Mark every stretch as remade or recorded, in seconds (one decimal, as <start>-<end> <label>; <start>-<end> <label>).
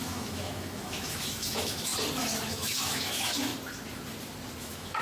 0.0-1.9 remade; 1.9-2.5 recorded; 2.5-3.5 remade; 3.5-4.6 recorded; 4.6-5.0 remade